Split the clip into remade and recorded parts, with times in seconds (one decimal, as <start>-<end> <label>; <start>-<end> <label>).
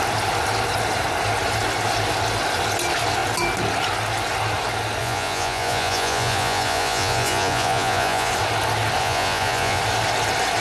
0.0-5.0 recorded; 5.0-8.3 remade; 8.3-9.0 recorded; 9.0-9.8 remade; 9.8-10.6 recorded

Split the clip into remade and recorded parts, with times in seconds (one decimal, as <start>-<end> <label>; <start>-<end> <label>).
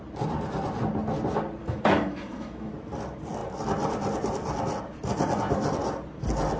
0.0-1.6 recorded; 1.6-2.7 remade; 2.7-6.6 recorded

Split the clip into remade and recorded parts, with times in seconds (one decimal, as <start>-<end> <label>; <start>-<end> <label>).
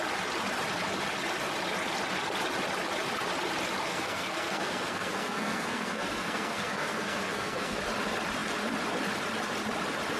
0.0-3.9 recorded; 3.9-7.8 remade; 7.8-10.2 recorded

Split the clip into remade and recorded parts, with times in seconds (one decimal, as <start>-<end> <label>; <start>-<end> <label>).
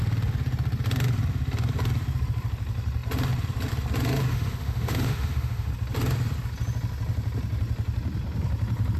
0.0-4.3 recorded; 4.3-5.7 remade; 5.7-9.0 recorded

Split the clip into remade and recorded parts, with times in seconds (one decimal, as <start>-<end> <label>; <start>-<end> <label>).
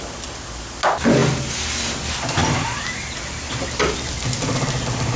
0.0-5.2 recorded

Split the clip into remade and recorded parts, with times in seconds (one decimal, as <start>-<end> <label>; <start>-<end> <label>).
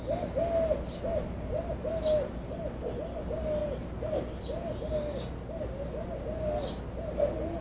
0.0-7.6 recorded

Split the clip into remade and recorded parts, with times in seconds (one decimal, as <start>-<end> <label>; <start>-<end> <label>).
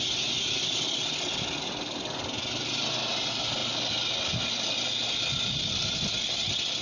0.0-6.8 recorded